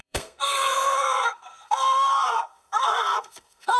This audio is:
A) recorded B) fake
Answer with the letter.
B